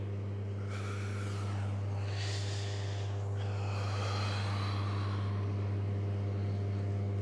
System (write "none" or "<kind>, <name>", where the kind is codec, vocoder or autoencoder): none